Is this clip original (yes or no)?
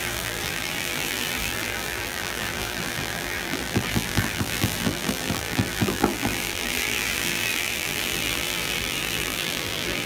no